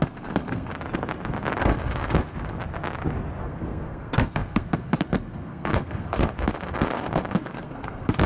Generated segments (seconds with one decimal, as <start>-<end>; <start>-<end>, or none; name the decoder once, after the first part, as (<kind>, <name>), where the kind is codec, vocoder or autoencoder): 0.0-0.7 (codec, SNAC); 1.6-2.6; 3.4-8.3